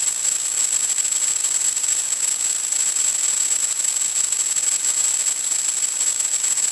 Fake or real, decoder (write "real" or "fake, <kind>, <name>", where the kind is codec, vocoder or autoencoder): real